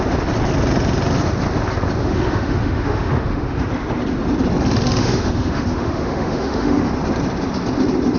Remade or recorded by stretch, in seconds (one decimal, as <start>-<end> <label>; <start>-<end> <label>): 0.0-2.0 recorded; 2.0-3.7 remade; 3.7-5.0 recorded; 5.0-6.9 remade; 6.9-8.2 recorded